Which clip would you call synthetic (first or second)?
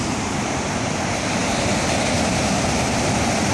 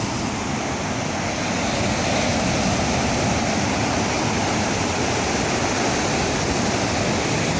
first